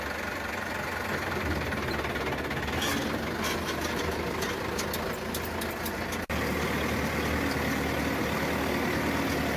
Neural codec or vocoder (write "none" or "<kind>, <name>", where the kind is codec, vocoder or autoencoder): none